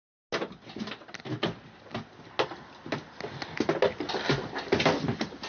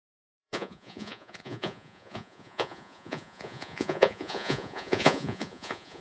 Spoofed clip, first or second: second